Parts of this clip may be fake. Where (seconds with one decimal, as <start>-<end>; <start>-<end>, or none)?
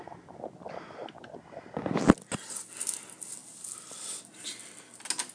none